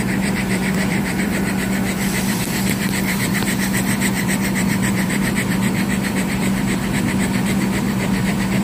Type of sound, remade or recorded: remade